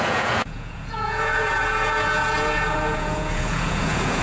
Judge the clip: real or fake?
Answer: fake